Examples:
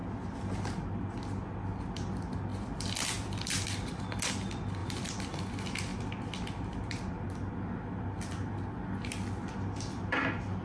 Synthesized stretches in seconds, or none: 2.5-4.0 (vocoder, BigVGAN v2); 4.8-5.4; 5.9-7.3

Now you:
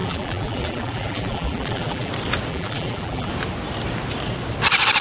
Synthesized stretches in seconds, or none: 0.0-2.1 (vocoder, BigVGAN v2); 2.5-3.3